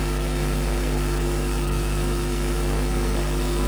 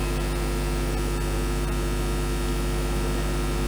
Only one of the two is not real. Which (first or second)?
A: first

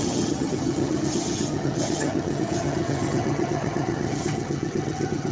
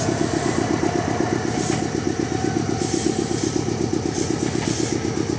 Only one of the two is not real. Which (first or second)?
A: first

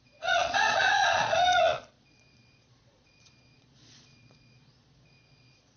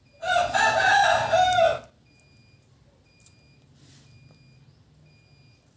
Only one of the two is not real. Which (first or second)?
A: first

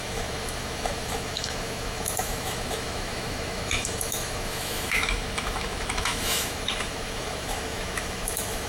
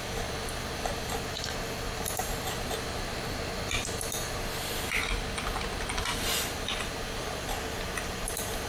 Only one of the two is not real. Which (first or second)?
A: first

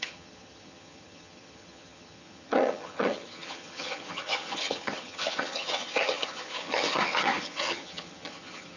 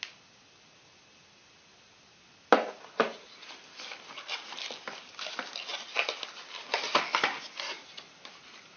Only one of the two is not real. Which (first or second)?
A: first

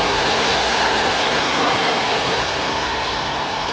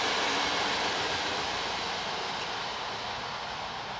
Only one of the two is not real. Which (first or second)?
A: first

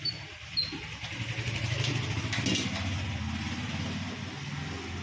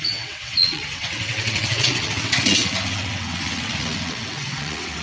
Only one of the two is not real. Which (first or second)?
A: second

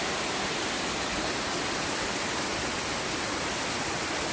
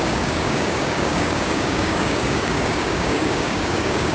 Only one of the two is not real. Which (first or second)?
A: second